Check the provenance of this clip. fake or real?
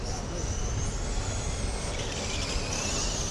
real